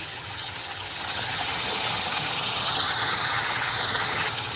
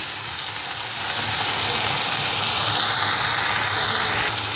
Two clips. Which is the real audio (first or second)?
second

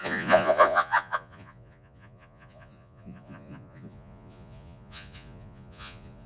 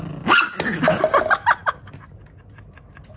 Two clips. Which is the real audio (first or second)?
second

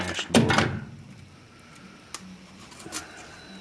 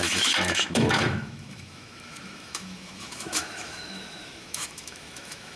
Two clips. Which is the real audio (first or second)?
first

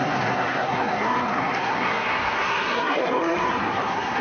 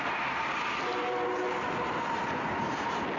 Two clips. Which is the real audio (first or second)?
second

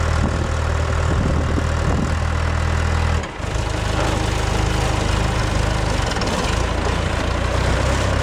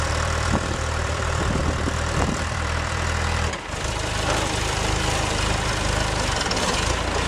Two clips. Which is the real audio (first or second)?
first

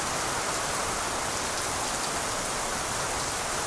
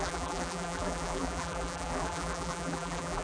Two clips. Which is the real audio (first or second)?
first